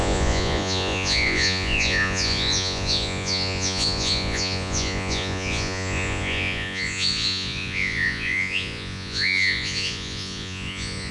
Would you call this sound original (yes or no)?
no